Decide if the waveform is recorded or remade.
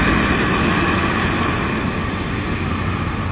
recorded